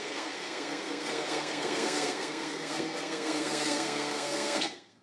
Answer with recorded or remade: remade